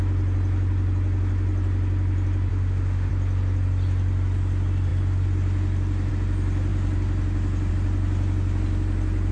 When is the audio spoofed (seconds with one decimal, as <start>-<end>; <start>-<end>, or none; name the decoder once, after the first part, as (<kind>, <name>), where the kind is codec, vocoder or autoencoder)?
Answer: 2.5-3.1 (autoencoder, DAC-VAE)